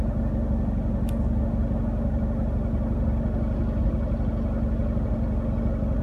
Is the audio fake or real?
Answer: real